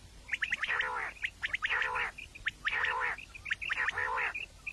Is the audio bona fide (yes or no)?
no